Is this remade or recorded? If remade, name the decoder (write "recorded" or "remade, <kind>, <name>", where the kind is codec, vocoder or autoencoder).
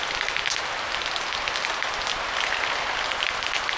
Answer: recorded